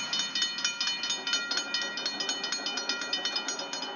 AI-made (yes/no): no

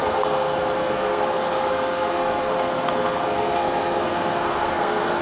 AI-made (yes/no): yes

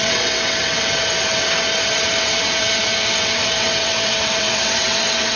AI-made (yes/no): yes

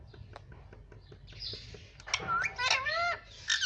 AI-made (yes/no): no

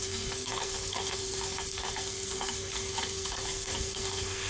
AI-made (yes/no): yes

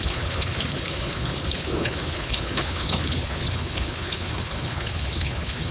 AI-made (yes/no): yes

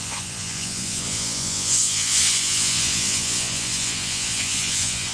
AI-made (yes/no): yes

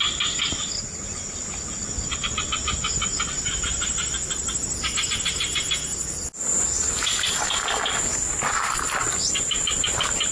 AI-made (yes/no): no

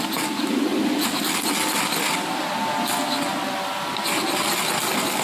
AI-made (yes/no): no